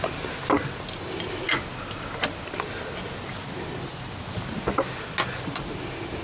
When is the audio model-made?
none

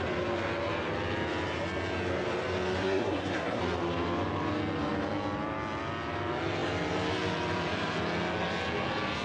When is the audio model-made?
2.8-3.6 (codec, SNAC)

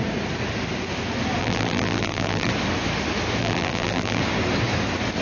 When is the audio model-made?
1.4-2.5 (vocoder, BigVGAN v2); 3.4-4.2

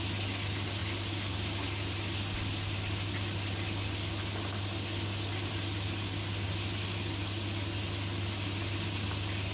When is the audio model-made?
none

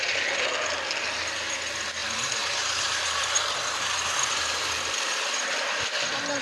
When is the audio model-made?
2.0-5.8 (vocoder, BigVGAN v2)